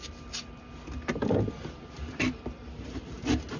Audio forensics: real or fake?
real